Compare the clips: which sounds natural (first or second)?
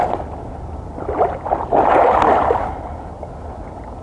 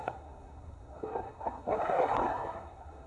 first